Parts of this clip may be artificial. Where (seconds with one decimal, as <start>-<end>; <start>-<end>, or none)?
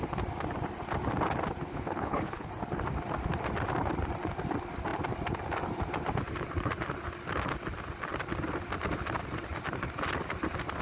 1.7-2.5